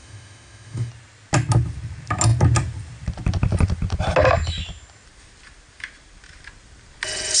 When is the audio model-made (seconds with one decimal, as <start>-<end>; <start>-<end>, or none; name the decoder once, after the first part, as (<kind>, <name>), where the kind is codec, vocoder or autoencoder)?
0.0-0.9 (autoencoder, DAC-VAE)